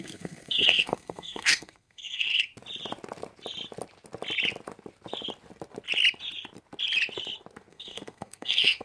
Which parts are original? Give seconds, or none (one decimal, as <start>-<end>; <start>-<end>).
2.5-7.7